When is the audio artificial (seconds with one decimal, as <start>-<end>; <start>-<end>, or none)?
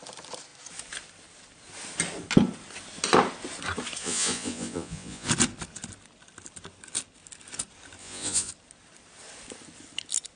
4.0-5.3; 8.0-8.5